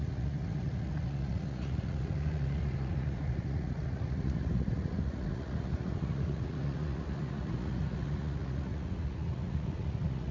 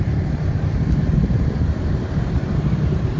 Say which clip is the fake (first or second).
first